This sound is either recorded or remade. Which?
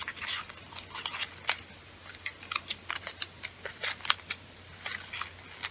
recorded